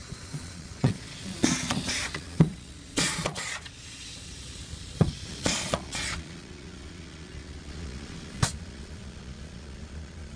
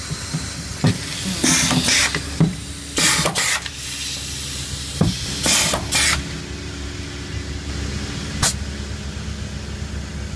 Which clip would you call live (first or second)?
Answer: second